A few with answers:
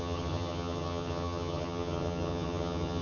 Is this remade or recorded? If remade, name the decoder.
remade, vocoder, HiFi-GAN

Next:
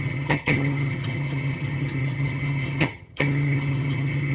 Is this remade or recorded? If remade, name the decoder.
remade, vocoder, HiFi-GAN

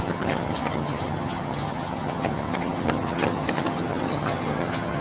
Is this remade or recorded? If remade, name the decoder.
remade, vocoder, HiFi-GAN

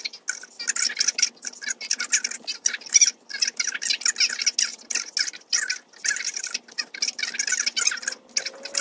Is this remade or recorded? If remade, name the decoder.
recorded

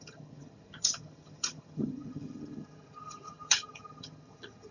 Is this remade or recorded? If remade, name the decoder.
remade, vocoder, HiFi-GAN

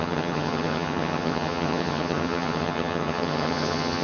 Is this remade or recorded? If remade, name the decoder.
remade, vocoder, HiFi-GAN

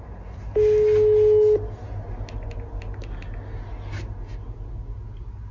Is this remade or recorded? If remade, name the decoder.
recorded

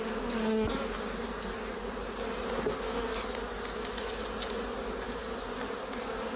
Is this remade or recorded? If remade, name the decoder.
recorded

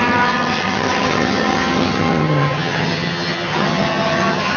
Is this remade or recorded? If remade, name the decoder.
remade, vocoder, HiFi-GAN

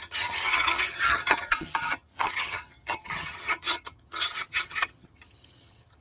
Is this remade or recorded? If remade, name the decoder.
remade, vocoder, HiFi-GAN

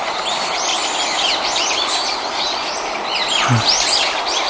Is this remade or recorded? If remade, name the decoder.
recorded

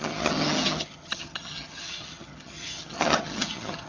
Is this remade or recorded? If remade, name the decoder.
remade, vocoder, HiFi-GAN